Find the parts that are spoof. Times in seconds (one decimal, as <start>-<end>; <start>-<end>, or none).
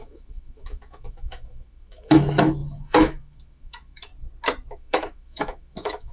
0.0-4.1; 4.7-6.1